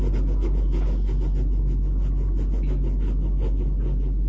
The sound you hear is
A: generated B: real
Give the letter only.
B